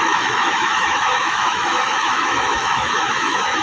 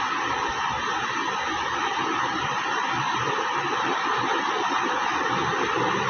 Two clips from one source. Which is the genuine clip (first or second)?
second